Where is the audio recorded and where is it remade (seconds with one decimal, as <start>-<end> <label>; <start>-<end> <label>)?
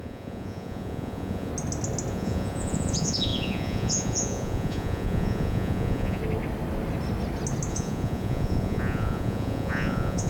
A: 0.0-1.5 remade; 1.5-2.1 recorded; 2.1-6.2 remade; 6.2-7.7 recorded; 7.7-10.3 remade